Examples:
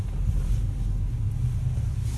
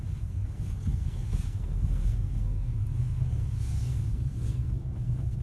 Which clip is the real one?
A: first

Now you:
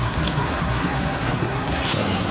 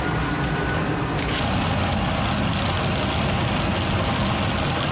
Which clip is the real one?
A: second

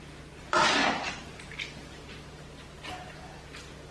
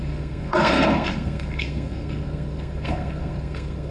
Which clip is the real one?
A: first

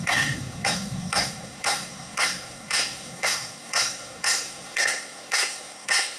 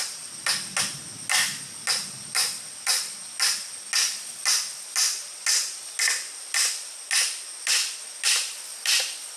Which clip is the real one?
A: second